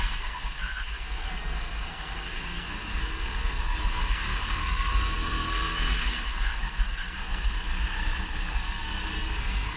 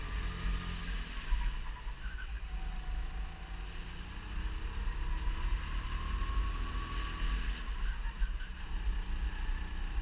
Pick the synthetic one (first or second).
first